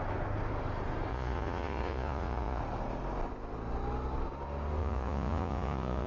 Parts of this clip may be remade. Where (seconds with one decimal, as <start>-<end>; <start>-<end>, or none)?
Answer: 1.1-2.6; 4.8-6.1

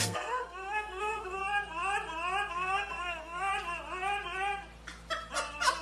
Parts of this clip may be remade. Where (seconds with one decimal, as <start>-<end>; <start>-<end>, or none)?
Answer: 0.0-1.4; 2.5-3.5

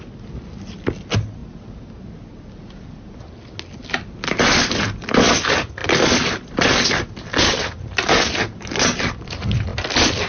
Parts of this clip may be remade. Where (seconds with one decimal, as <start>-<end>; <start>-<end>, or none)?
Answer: none

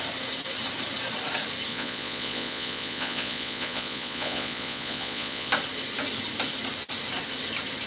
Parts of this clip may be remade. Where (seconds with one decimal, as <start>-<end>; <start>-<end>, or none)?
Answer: 1.7-5.5

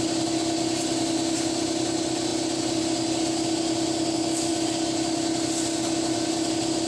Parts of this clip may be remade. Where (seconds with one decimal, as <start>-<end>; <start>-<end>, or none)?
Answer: none

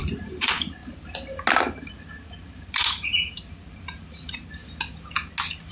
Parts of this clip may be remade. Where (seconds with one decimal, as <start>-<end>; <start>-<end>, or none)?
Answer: 0.0-0.8; 1.9-4.6

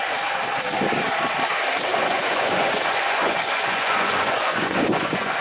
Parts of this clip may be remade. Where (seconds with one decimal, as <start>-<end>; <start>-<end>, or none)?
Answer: 1.9-5.4